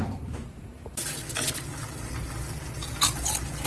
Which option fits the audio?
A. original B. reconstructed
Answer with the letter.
A